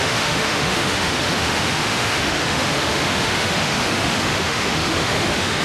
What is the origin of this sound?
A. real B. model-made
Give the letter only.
B